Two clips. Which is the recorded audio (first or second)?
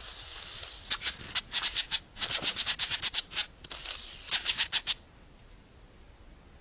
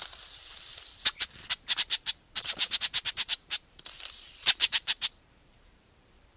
first